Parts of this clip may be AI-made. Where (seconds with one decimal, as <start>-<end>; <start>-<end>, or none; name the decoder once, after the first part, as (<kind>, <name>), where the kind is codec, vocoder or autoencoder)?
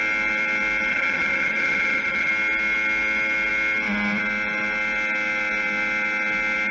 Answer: 0.9-2.3 (vocoder, HiFi-GAN)